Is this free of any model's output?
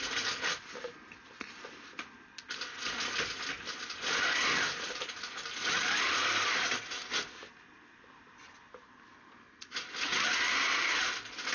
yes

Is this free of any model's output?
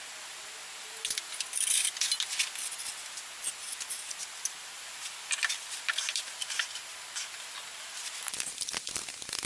yes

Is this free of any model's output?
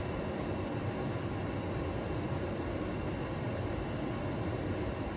yes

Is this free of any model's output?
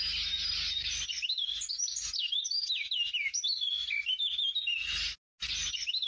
yes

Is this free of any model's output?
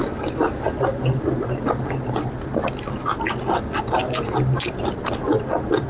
yes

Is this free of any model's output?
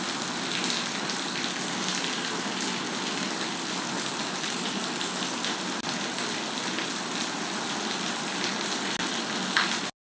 yes